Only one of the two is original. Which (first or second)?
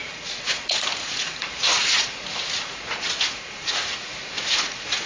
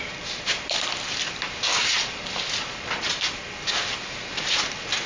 second